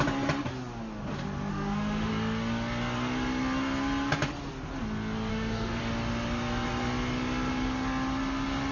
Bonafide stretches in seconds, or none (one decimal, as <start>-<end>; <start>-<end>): 0.0-1.5; 2.1-5.3; 5.8-8.7